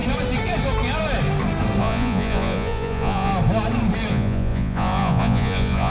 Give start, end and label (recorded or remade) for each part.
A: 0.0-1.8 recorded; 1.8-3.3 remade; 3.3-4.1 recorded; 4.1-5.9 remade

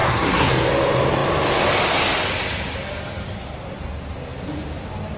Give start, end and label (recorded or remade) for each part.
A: 0.0-0.5 remade; 0.5-5.2 recorded